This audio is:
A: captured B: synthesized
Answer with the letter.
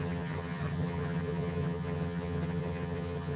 B